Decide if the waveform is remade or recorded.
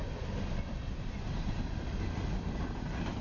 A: recorded